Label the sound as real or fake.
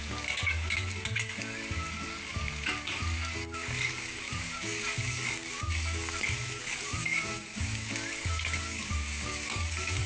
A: fake